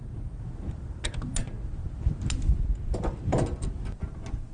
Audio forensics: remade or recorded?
recorded